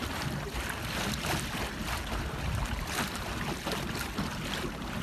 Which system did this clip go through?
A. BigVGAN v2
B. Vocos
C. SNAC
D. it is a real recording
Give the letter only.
D